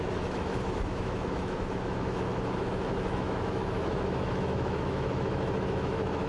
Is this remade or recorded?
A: remade